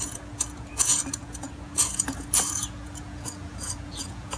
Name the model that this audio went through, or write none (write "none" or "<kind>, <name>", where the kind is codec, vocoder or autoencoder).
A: vocoder, Vocos